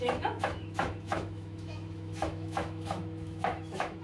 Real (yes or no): no